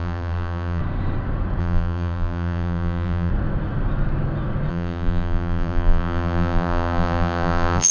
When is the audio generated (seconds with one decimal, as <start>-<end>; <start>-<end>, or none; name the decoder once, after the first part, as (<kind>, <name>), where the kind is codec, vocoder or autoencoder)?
0.0-0.8 (vocoder, BigVGAN v2); 1.6-3.3; 4.7-7.9